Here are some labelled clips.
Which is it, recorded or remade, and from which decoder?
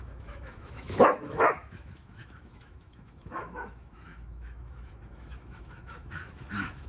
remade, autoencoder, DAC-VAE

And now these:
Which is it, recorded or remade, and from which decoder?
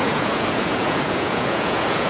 remade, vocoder, Vocos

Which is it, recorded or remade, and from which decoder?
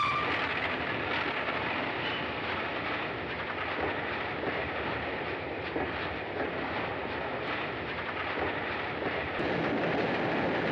recorded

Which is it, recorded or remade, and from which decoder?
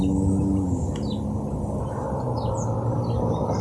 recorded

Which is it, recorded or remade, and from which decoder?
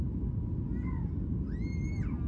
recorded